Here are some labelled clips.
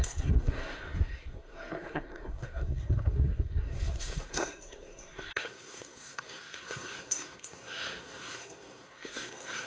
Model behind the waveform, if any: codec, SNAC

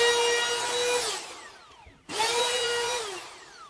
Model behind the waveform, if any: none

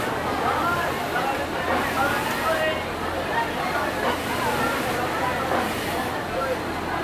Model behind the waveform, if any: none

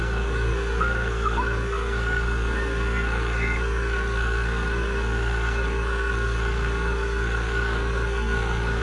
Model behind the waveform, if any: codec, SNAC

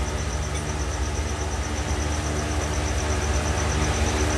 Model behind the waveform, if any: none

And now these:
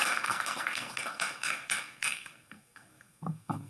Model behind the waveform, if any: codec, SNAC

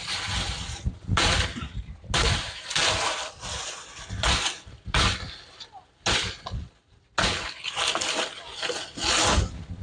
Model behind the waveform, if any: none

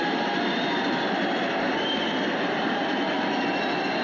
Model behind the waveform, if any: none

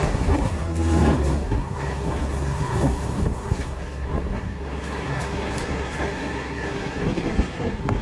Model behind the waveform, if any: codec, SNAC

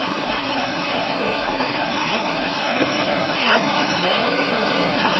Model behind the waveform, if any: codec, SNAC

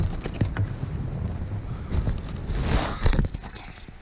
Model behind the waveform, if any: none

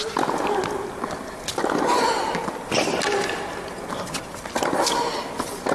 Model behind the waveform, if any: none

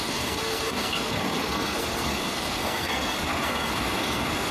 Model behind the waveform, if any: codec, SNAC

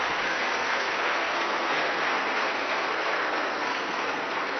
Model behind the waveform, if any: codec, SNAC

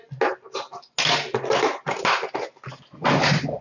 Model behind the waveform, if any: none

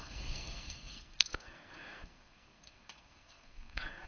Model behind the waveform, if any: codec, SNAC